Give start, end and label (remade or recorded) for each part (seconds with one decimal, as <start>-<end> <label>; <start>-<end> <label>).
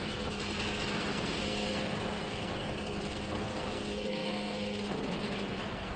0.0-6.0 remade